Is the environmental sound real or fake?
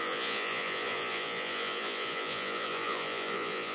fake